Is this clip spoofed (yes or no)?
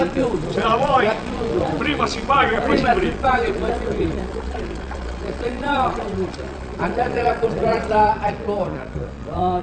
yes